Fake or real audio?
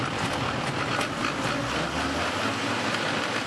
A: real